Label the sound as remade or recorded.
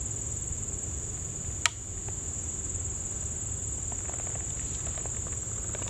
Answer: recorded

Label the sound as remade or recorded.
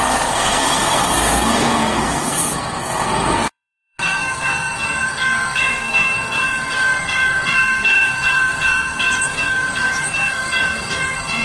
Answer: remade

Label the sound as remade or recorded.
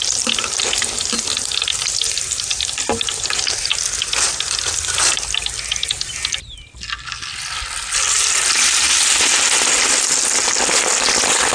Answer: recorded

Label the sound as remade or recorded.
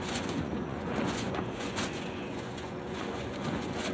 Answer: remade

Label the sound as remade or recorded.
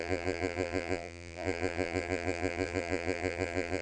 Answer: remade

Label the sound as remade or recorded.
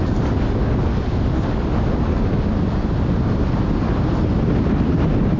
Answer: recorded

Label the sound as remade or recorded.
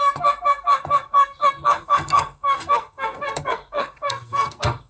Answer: remade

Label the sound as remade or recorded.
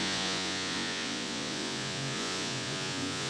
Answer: remade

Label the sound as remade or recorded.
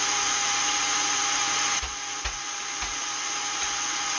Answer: remade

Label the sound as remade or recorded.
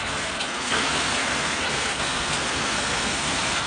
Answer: remade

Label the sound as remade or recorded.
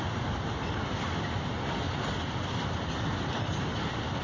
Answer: recorded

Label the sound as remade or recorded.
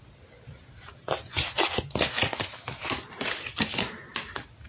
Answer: recorded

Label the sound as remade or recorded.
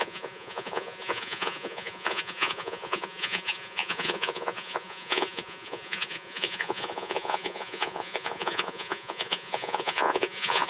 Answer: remade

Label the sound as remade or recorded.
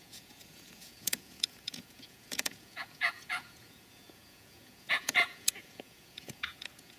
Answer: remade